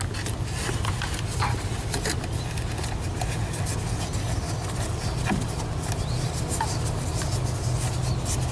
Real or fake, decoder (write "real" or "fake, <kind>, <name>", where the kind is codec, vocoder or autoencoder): real